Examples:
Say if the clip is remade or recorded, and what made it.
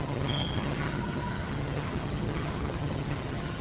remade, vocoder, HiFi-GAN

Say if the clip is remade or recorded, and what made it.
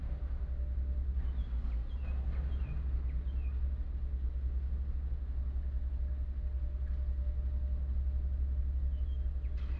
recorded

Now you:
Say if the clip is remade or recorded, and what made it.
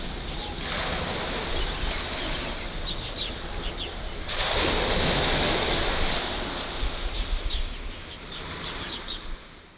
recorded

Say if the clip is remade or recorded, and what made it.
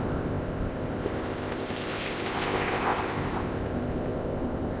remade, codec, ZipCodec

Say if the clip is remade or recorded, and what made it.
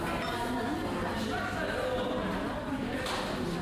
recorded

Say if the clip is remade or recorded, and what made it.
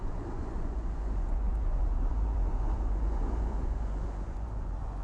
remade, vocoder, Vocos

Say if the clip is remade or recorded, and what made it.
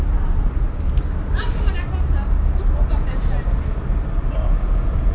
recorded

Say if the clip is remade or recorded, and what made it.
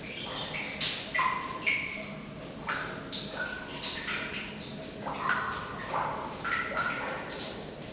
recorded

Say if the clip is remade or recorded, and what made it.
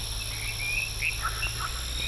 recorded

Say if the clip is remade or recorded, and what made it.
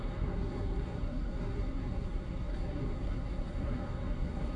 remade, codec, SNAC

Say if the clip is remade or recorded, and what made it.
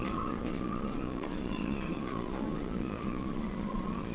remade, vocoder, Vocos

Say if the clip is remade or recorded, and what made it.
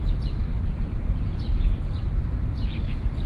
remade, vocoder, BigVGAN v2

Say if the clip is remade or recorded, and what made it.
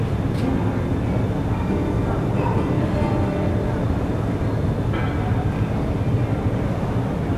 recorded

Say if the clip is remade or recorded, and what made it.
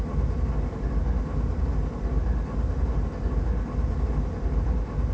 recorded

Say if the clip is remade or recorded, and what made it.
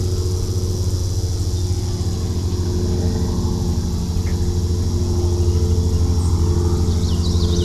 recorded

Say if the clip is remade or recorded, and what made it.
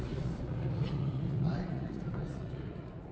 remade, vocoder, Vocos